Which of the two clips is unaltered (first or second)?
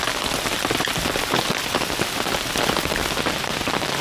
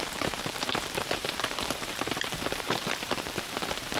first